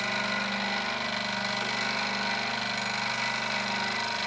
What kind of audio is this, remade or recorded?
recorded